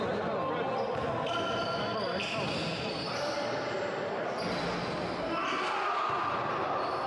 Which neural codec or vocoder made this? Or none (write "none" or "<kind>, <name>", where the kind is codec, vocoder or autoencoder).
none